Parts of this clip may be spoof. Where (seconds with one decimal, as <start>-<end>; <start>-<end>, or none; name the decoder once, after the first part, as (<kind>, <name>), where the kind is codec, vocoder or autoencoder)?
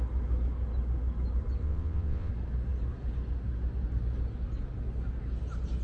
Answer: 1.6-2.3 (vocoder, WaveNeXt)